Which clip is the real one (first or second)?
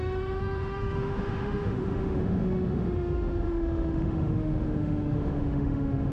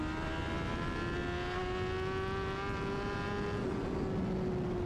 second